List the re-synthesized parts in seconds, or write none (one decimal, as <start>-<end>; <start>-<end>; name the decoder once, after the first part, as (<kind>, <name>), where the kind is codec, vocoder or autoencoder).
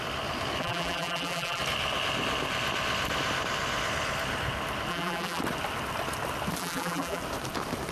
0.6-1.6 (vocoder, BigVGAN v2); 4.9-5.4; 6.6-7.2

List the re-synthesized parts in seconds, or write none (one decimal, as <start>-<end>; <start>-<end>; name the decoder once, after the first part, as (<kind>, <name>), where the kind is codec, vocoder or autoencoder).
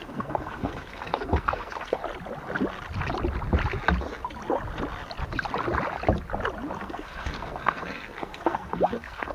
0.0-2.0 (codec, SNAC); 6.8-9.3